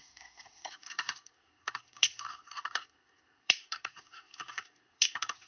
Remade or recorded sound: remade